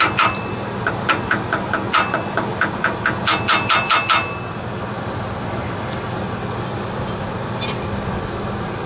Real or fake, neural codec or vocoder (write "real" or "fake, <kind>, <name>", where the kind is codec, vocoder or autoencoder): real